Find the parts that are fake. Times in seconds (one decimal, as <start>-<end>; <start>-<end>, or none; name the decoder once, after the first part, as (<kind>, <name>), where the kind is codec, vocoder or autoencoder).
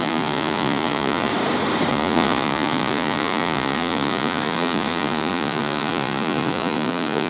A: 0.0-1.3 (vocoder, Vocos); 1.9-7.3